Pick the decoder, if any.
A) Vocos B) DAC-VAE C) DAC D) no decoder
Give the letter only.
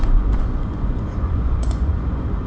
A